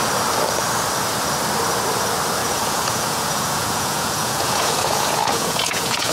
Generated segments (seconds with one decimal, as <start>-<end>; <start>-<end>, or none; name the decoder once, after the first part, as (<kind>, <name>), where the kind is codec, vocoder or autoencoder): 2.4-6.1 (vocoder, Vocos)